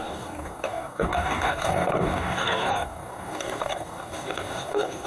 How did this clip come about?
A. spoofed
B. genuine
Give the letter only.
A